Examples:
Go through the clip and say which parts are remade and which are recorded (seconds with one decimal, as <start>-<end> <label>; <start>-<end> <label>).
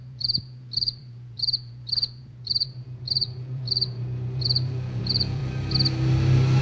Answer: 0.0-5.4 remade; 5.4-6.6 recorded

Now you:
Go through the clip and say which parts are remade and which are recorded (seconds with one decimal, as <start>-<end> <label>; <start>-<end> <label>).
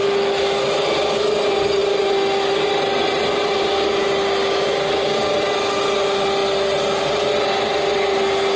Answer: 0.0-8.6 recorded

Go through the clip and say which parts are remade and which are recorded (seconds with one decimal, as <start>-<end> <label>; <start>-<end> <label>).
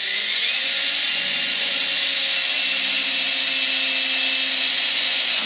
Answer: 0.0-1.8 remade; 1.8-4.7 recorded; 4.7-5.5 remade